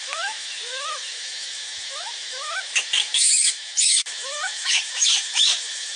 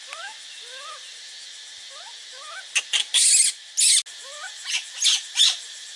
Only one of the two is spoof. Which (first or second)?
first